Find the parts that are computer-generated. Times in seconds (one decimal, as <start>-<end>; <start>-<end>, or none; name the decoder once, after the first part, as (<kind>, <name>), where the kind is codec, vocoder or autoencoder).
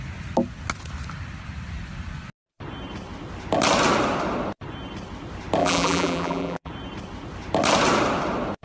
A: 5.6-6.7 (vocoder, BigVGAN v2)